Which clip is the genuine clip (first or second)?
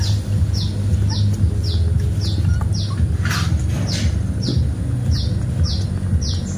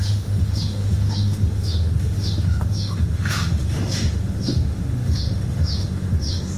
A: first